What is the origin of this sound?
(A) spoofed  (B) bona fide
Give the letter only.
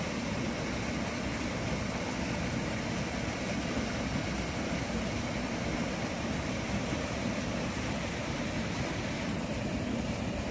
B